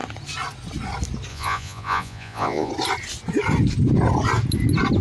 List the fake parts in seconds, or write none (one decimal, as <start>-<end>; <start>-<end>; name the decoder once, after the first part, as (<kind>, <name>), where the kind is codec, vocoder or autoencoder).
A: 1.3-2.7 (vocoder, Vocos)